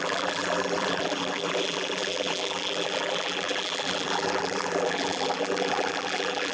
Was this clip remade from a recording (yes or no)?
yes